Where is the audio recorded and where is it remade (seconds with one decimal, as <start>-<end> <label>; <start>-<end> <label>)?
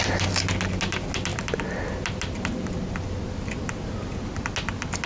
0.0-5.1 recorded